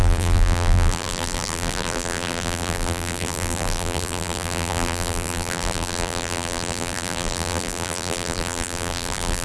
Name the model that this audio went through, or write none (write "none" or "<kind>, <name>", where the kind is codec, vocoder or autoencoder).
vocoder, BigVGAN v2